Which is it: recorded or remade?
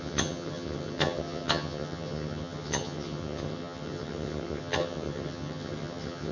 remade